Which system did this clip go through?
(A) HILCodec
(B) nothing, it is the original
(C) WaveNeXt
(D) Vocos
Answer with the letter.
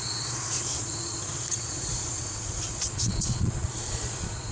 D